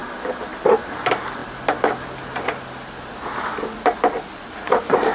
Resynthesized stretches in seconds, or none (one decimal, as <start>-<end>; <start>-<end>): none